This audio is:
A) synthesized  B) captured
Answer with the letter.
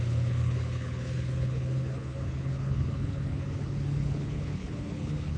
A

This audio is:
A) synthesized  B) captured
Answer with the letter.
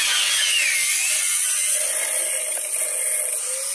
B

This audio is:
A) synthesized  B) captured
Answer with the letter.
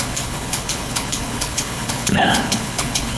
A